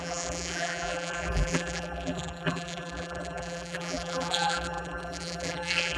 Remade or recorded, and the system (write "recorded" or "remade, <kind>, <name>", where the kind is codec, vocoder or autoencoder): remade, vocoder, BigVGAN v2